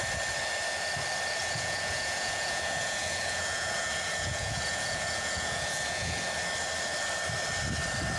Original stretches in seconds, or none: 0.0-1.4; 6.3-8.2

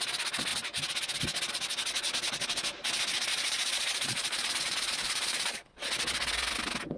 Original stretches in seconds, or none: 0.0-3.3; 5.9-7.0

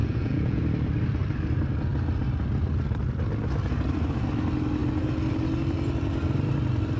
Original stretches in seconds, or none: 0.6-7.0

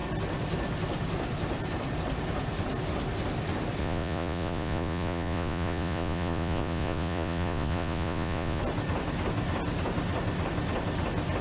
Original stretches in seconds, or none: 0.0-3.8; 8.6-11.4

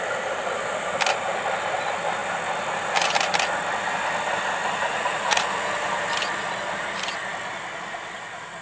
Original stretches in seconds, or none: 0.0-4.9; 5.4-8.6